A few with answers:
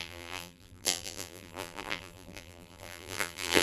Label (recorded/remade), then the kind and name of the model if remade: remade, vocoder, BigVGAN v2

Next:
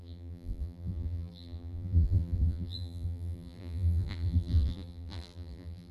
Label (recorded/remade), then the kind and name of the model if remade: remade, vocoder, BigVGAN v2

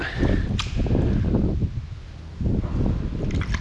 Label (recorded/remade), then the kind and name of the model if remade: recorded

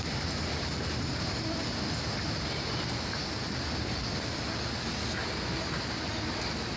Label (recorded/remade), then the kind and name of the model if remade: recorded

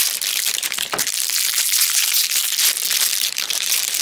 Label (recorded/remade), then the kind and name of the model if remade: remade, vocoder, BigVGAN v2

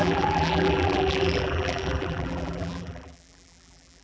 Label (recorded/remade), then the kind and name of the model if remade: remade, vocoder, BigVGAN v2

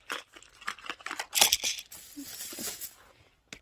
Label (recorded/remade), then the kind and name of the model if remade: recorded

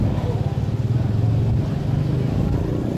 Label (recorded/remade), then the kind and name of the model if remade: recorded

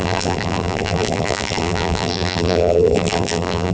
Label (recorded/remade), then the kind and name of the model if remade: remade, vocoder, BigVGAN v2